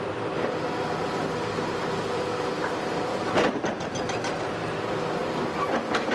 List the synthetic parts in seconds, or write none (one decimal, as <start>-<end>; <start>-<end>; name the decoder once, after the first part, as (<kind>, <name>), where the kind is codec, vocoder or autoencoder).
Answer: none